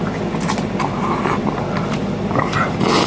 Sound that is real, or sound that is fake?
real